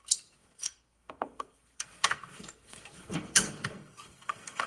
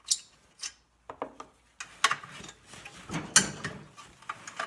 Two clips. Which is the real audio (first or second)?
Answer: second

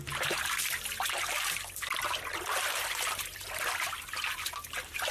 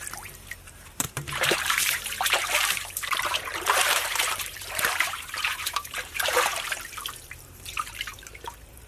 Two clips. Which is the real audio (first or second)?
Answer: first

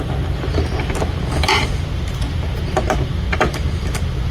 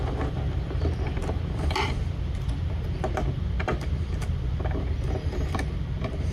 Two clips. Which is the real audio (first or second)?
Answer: first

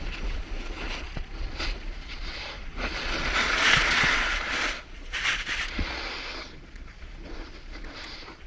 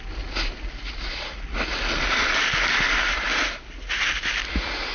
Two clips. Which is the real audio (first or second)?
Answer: second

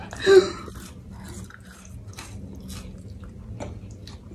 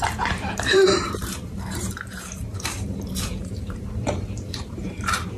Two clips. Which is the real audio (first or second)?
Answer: first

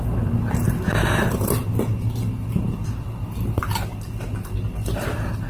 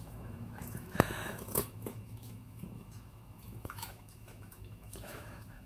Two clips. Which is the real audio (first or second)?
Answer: first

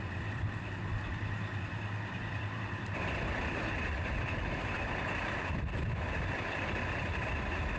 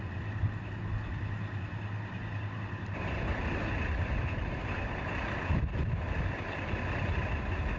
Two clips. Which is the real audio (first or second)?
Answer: second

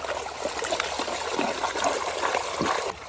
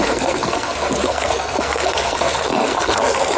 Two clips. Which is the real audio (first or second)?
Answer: first